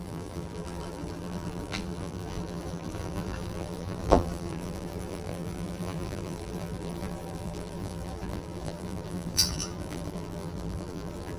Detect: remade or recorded remade